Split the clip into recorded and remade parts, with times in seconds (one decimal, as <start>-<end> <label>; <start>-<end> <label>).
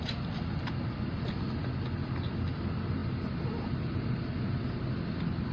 0.0-5.5 recorded